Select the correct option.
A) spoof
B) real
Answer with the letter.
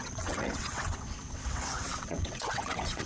A